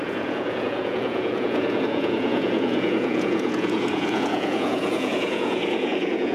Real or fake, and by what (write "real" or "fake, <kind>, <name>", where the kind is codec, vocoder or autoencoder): fake, vocoder, Vocos